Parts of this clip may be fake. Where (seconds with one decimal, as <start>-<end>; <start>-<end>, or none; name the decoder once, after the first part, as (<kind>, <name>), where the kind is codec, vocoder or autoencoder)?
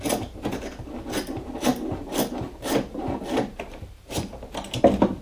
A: 1.7-4.8 (vocoder, BigVGAN v2)